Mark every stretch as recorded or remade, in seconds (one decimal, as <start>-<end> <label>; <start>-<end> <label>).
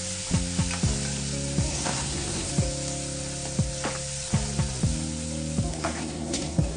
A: 0.0-1.7 recorded; 1.7-2.5 remade; 2.5-5.7 recorded; 5.7-6.8 remade